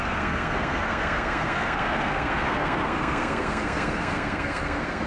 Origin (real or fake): fake